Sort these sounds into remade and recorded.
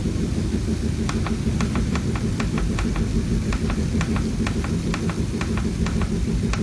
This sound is remade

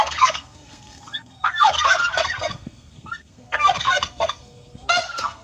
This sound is remade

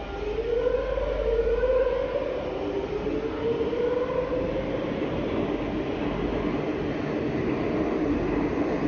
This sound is recorded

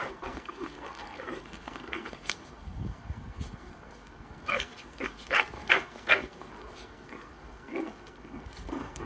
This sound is remade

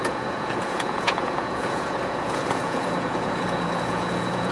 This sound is remade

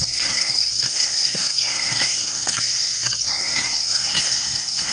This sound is remade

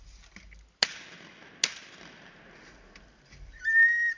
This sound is recorded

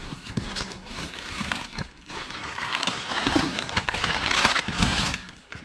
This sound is remade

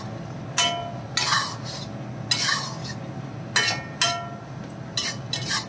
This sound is recorded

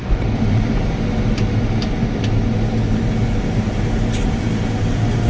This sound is recorded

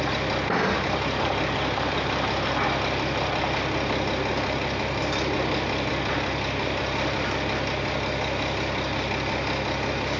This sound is recorded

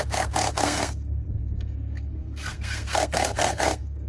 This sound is remade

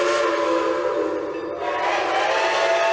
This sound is recorded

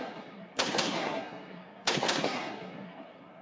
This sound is remade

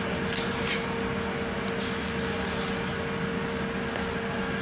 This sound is recorded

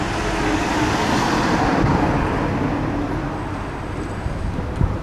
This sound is recorded